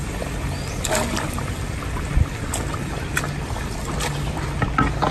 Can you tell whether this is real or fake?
real